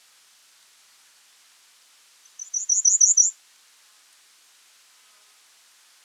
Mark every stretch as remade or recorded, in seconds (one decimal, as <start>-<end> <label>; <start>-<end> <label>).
0.0-6.0 recorded